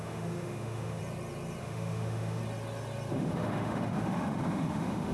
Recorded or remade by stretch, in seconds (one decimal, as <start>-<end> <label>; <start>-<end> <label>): 0.0-1.0 remade; 1.0-1.6 recorded; 1.6-2.4 remade; 2.4-3.1 recorded; 3.1-5.1 remade